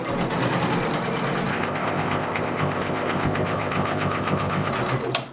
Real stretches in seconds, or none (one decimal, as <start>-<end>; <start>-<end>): 0.0-1.5; 4.7-5.3